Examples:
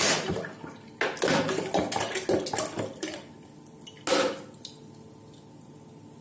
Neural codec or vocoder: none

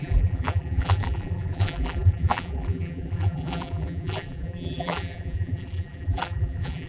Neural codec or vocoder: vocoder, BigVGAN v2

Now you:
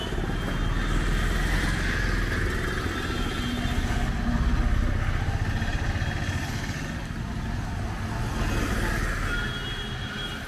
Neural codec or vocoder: none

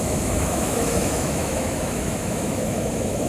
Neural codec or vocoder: autoencoder, DAC-VAE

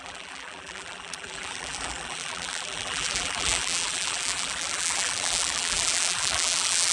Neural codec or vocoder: vocoder, BigVGAN v2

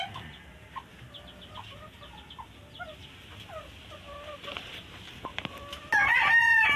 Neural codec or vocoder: none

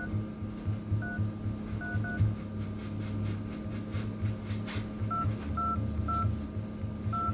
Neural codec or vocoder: none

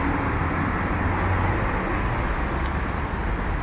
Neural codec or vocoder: none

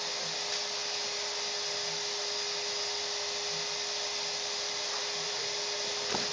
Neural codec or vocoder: none